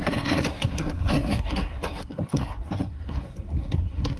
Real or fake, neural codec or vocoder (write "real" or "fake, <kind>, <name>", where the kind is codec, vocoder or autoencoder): fake, codec, SNAC